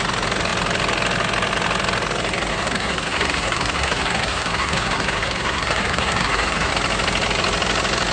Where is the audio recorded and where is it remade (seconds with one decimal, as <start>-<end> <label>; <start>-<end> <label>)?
0.0-2.5 recorded; 2.5-6.7 remade; 6.7-8.1 recorded